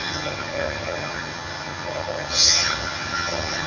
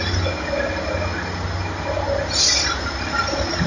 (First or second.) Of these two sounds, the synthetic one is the first